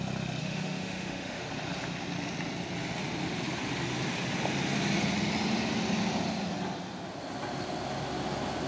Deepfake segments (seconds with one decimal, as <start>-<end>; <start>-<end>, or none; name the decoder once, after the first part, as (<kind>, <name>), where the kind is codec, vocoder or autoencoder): 0.4-1.5 (autoencoder, DAC-VAE)